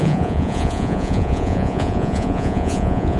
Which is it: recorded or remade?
remade